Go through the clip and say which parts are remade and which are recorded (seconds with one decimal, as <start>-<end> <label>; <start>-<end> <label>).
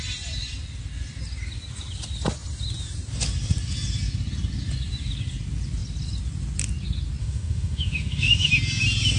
0.0-7.2 recorded; 7.2-8.5 remade; 8.5-9.2 recorded